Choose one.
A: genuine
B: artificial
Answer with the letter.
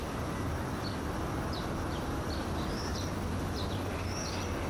A